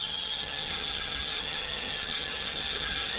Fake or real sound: fake